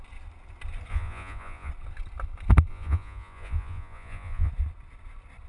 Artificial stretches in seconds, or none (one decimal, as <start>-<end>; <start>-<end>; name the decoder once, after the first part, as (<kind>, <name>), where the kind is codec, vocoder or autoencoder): 0.9-1.7 (vocoder, Vocos); 2.7-4.5